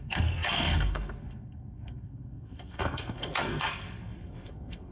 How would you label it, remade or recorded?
remade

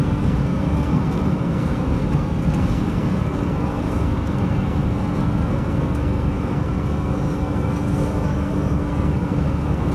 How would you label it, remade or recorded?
remade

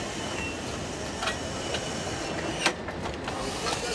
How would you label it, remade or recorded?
recorded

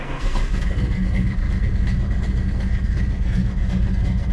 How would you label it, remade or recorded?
remade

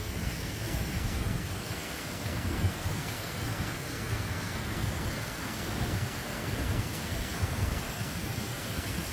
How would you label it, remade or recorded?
remade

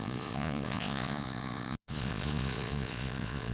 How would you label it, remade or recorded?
remade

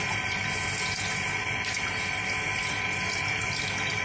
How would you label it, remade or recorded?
recorded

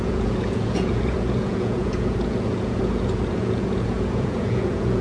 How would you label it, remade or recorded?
remade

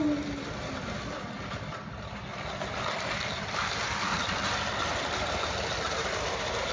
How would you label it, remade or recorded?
recorded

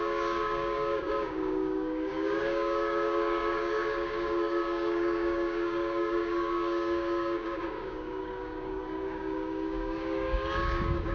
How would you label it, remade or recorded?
remade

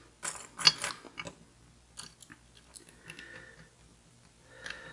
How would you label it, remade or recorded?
recorded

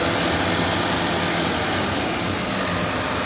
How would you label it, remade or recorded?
recorded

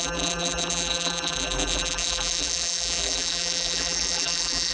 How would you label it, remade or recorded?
remade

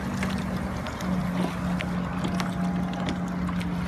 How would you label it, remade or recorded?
recorded